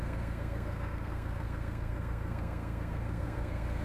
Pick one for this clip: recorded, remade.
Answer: remade